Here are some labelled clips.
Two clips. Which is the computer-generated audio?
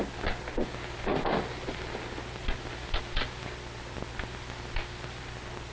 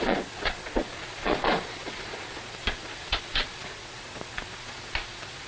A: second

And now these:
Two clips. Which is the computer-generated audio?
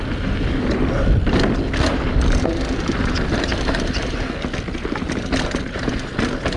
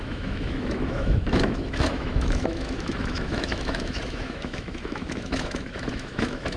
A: second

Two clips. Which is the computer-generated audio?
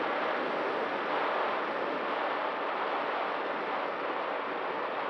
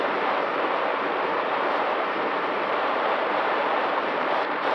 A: second